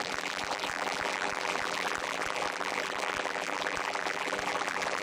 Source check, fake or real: fake